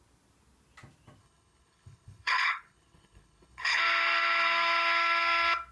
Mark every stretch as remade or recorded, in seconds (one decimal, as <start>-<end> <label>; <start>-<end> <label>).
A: 0.0-1.2 recorded; 1.2-3.8 remade; 3.8-5.7 recorded